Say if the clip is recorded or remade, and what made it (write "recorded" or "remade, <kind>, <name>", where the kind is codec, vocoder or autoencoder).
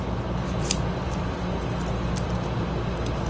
recorded